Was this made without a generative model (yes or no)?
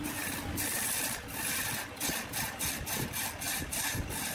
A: yes